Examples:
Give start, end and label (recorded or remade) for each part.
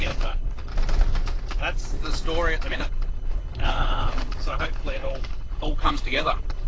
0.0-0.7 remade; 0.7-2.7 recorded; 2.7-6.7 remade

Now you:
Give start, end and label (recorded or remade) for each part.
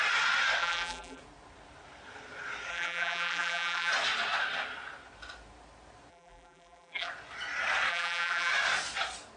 0.0-0.6 recorded; 0.6-1.2 remade; 1.2-2.7 recorded; 2.7-3.9 remade; 3.9-6.1 recorded; 6.1-7.1 remade; 7.1-7.9 recorded; 7.9-8.5 remade; 8.5-9.4 recorded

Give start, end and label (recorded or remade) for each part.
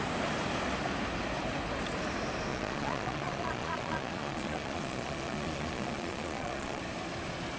0.0-2.5 recorded; 2.5-6.8 remade; 6.8-7.6 recorded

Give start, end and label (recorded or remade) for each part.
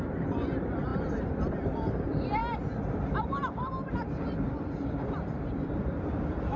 0.0-6.6 remade